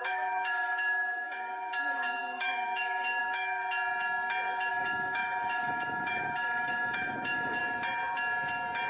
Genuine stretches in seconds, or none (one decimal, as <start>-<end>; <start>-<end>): 3.6-4.7; 7.6-8.9